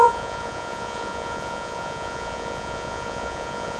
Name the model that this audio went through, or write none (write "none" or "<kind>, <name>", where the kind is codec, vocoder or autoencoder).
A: vocoder, Vocos